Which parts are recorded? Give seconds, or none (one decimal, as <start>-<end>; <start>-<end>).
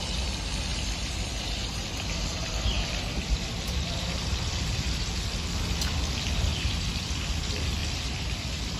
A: 0.0-0.7; 5.1-6.5; 7.2-8.8